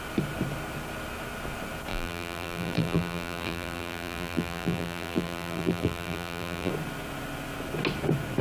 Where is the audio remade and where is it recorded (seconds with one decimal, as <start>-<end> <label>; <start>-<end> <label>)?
0.0-1.9 recorded; 1.9-6.7 remade; 6.7-8.4 recorded